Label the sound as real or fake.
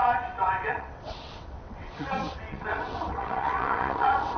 fake